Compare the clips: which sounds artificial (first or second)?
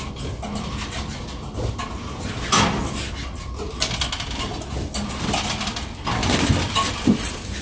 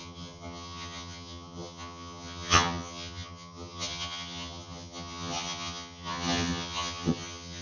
second